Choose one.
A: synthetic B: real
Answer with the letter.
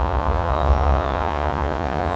A